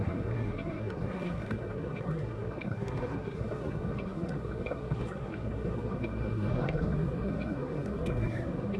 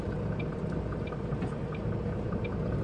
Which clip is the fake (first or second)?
first